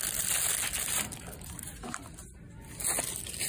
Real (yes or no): yes